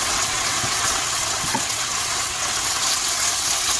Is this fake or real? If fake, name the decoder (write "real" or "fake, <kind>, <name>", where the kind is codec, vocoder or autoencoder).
fake, vocoder, WaveNeXt